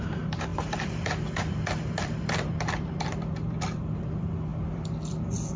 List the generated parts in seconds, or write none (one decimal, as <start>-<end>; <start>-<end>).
0.0-5.6